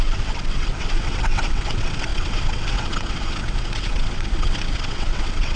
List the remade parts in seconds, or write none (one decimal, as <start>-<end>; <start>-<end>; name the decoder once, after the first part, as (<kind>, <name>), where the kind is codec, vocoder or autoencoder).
0.0-5.6 (vocoder, WaveNeXt)